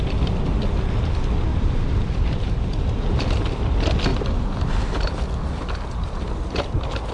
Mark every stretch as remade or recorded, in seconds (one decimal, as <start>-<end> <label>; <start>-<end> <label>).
0.0-1.5 recorded; 1.5-3.2 remade; 3.2-4.1 recorded; 4.1-4.7 remade; 4.7-7.1 recorded